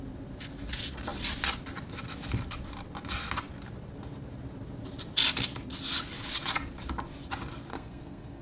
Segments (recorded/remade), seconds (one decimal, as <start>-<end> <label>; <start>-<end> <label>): 0.0-7.7 recorded; 7.7-8.4 remade